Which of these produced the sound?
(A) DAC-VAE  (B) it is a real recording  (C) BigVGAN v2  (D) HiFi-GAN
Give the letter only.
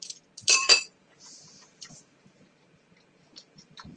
C